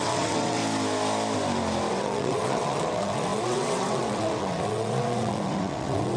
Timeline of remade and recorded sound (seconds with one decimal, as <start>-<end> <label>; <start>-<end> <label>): 0.0-0.6 remade; 0.6-1.9 recorded; 1.9-6.2 remade